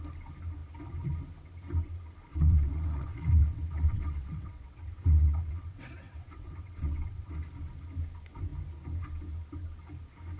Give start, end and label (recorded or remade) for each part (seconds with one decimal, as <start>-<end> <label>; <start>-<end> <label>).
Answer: 0.0-2.3 recorded; 2.3-7.4 remade; 7.4-10.4 recorded